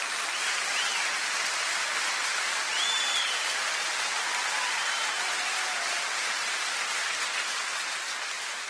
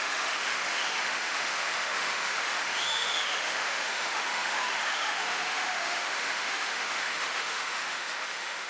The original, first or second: first